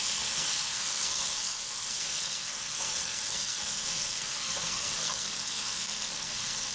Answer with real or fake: fake